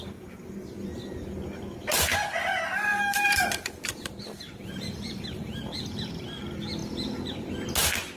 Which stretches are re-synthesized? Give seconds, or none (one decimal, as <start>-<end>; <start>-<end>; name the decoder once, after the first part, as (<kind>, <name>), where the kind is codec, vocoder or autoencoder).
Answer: 2.9-5.6 (vocoder, BigVGAN v2)